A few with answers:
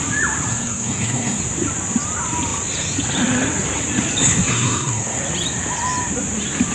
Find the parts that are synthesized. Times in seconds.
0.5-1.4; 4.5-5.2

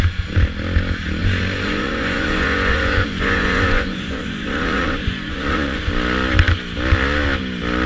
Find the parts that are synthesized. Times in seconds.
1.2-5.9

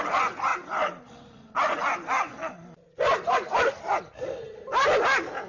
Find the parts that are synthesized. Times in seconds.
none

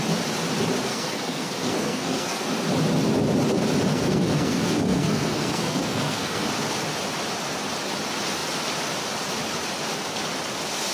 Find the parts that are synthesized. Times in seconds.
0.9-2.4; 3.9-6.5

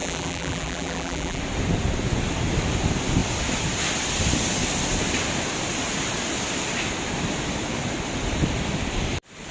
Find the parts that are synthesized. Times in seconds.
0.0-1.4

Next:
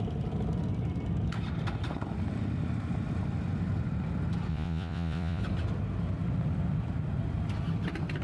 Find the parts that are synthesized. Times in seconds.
4.5-5.4

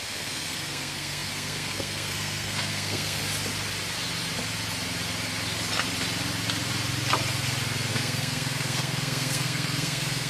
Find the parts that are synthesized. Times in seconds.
0.0-3.2; 7.9-10.3